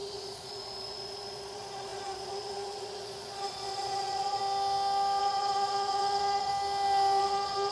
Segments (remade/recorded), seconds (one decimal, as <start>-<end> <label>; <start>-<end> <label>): 0.0-4.4 remade; 4.4-5.2 recorded; 5.2-6.5 remade; 6.5-7.2 recorded; 7.2-7.7 remade